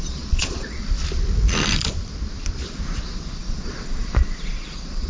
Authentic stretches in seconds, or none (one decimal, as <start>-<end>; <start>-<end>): 0.8-3.4